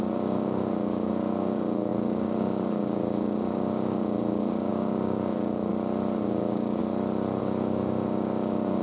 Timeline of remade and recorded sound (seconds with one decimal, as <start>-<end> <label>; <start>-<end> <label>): 0.0-5.7 remade; 5.7-6.2 recorded; 6.2-6.8 remade; 6.8-7.4 recorded; 7.4-8.8 remade